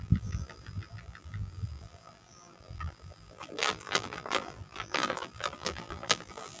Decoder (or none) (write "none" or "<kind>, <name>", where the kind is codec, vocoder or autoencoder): vocoder, BigVGAN v2